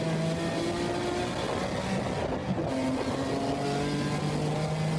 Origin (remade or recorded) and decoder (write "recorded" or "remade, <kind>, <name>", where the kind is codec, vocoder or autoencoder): recorded